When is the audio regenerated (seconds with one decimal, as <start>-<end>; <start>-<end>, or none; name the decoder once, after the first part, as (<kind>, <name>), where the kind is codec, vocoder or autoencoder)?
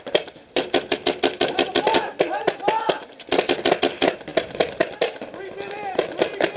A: none